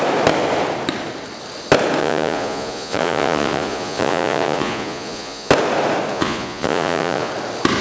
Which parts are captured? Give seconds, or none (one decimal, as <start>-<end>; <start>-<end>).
0.0-2.0; 5.5-6.1; 7.3-7.8